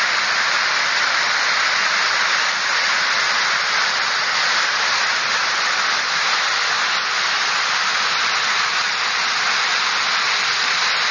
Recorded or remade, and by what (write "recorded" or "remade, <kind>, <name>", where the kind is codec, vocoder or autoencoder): recorded